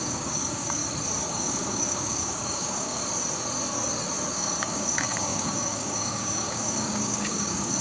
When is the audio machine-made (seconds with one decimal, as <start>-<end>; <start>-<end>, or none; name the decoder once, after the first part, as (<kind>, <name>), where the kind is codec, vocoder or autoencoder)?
0.0-0.8 (codec, DAC); 1.3-3.0; 4.3-7.8